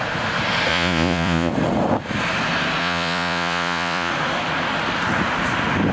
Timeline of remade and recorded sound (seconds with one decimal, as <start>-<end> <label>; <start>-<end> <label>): 0.0-0.7 recorded; 0.7-1.5 remade; 1.5-2.8 recorded; 2.8-4.1 remade; 4.1-5.9 recorded